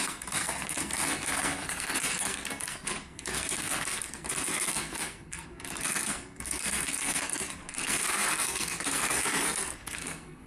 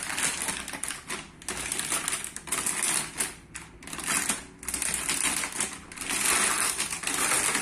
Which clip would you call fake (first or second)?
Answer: first